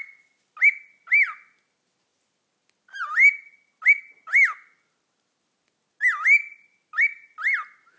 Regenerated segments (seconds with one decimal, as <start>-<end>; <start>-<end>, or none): none